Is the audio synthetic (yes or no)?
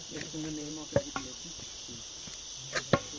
no